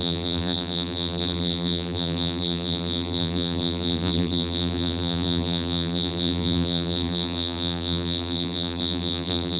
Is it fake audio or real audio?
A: fake